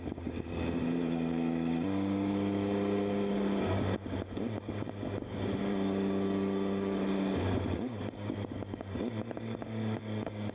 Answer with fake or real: fake